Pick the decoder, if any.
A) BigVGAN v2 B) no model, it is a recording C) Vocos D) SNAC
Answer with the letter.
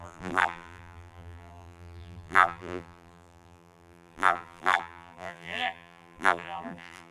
A